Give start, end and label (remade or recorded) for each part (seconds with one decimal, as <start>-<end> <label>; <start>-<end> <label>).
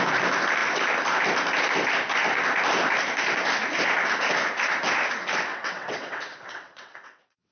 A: 0.0-5.5 recorded; 5.5-7.5 remade